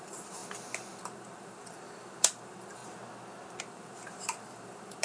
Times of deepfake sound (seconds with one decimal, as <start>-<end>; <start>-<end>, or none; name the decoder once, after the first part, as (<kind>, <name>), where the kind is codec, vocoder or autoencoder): 0.0-0.4 (vocoder, BigVGAN v2); 1.0-2.8; 3.6-5.0